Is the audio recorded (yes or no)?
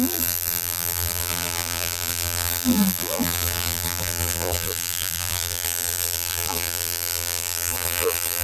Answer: no